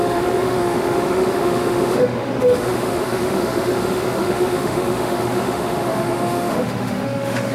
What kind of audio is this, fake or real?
fake